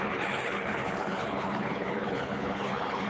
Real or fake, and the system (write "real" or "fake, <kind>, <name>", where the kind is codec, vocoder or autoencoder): fake, codec, HILCodec